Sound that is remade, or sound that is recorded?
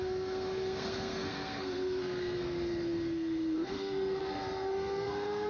remade